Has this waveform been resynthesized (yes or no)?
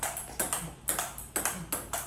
no